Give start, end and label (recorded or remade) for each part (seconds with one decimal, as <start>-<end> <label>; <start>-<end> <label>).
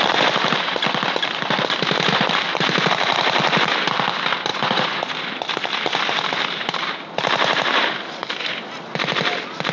0.0-4.5 recorded; 4.5-5.1 remade; 5.1-9.7 recorded